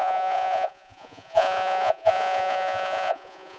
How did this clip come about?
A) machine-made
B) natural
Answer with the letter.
A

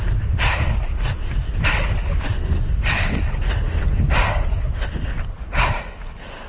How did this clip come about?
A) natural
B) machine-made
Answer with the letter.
A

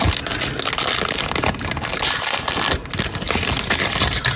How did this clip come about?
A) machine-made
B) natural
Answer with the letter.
B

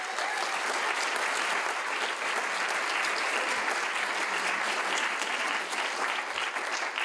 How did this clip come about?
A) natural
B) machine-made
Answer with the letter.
A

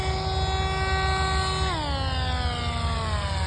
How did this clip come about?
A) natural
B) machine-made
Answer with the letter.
A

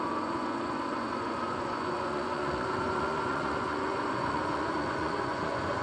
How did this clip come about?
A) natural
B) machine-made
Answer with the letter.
B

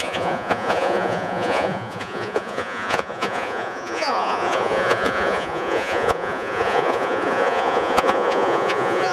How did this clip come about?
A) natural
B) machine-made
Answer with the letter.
B